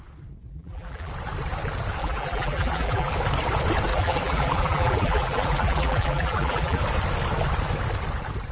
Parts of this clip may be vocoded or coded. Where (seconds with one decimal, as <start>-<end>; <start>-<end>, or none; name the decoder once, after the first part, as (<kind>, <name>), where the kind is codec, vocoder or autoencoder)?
0.5-1.1 (vocoder, BigVGAN v2); 2.0-3.1; 3.9-6.8